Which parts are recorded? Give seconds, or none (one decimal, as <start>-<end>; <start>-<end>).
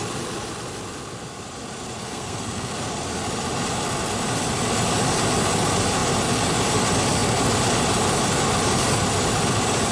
0.0-2.0; 2.7-9.9